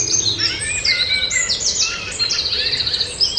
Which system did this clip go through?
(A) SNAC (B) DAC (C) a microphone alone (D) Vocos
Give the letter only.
C